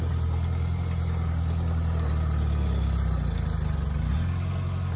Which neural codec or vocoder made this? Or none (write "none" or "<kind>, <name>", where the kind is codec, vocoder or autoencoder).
none